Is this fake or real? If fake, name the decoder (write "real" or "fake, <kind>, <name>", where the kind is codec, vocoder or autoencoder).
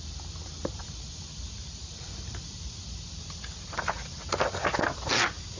real